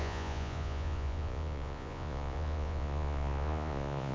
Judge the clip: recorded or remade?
remade